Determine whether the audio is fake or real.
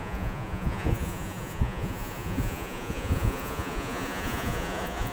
fake